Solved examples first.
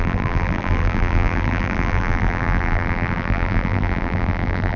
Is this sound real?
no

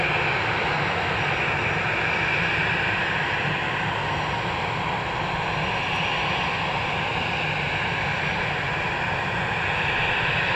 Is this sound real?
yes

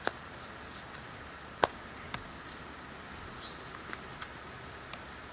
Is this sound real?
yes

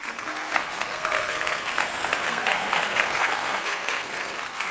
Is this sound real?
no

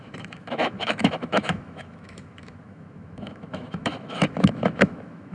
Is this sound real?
no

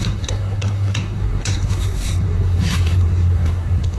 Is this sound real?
no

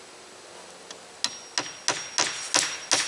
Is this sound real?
yes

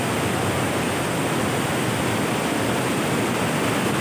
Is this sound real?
yes